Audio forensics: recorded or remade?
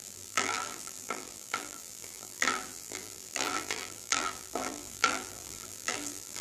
remade